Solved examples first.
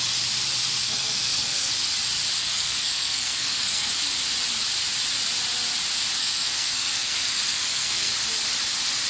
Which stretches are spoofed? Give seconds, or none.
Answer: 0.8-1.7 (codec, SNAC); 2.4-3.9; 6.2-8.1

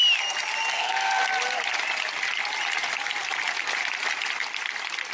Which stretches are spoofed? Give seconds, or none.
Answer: 0.7-1.2 (codec, SNAC)

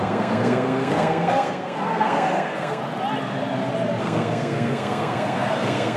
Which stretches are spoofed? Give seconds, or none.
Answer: 0.0-2.8 (codec, SNAC); 4.0-6.0

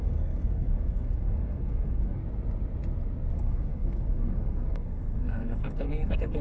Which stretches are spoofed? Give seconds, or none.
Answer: 0.0-2.2 (codec, SNAC); 3.3-6.4